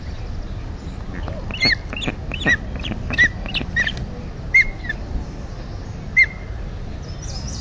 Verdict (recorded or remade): recorded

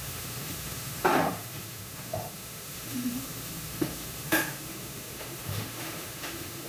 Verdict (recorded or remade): remade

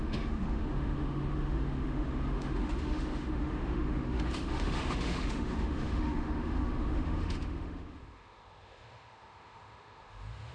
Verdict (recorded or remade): remade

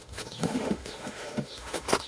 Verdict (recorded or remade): remade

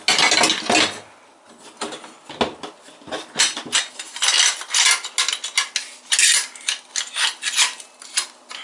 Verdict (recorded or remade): recorded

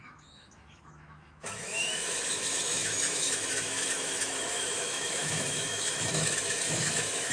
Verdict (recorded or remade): remade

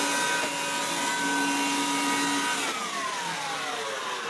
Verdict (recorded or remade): recorded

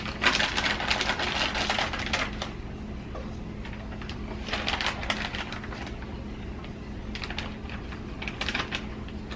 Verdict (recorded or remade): recorded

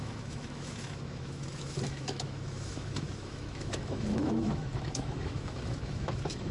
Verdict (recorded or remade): remade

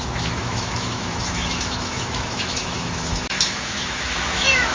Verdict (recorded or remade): remade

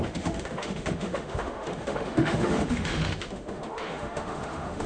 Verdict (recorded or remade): remade